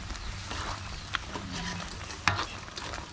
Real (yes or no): yes